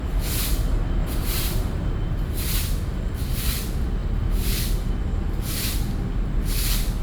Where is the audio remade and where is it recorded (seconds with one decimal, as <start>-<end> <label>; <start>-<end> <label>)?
0.0-1.0 recorded; 1.0-1.9 remade; 1.9-7.0 recorded